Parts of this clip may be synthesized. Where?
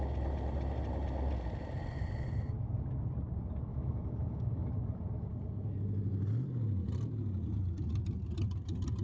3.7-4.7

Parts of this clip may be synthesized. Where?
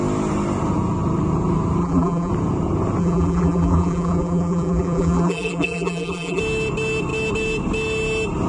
1.8-2.3; 3.0-6.4